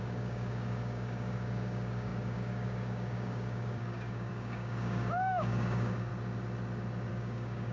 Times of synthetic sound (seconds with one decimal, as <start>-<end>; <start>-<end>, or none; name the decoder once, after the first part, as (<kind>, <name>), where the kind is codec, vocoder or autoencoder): 0.0-6.1 (codec, DAC); 7.1-7.7